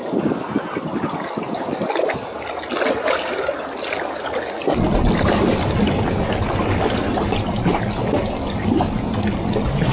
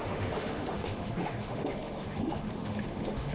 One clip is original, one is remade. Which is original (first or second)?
first